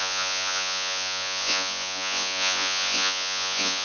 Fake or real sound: fake